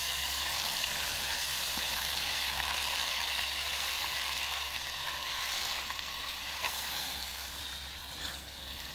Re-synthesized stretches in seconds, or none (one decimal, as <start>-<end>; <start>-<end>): 0.0-7.6; 8.2-8.9